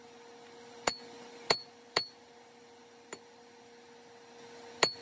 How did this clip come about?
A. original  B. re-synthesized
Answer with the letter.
A